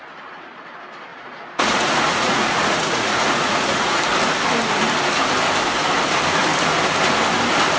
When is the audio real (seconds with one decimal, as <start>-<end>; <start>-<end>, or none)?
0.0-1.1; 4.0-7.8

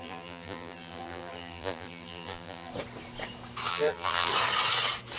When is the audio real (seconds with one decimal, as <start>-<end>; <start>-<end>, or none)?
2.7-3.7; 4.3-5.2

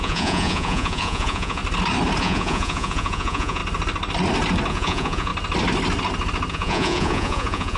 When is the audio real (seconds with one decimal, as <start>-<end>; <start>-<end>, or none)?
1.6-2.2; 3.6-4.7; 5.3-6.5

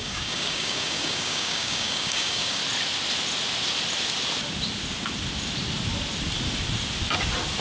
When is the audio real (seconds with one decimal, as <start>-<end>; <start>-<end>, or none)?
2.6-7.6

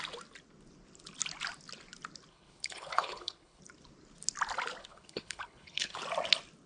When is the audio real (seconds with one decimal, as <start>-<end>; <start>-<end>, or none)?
0.0-2.3; 3.6-4.8; 6.0-6.7

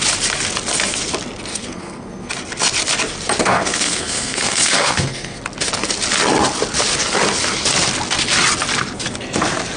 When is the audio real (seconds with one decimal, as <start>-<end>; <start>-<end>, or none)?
0.0-1.5; 2.3-3.4; 5.4-9.8

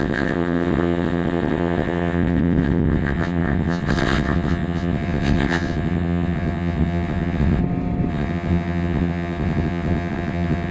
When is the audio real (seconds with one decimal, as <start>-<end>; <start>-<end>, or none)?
7.6-8.1

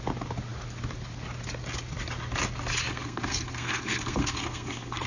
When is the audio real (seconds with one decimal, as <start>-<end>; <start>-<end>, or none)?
0.0-2.9